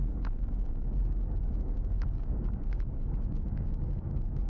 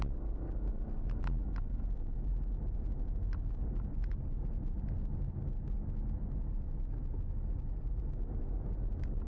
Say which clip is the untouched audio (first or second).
second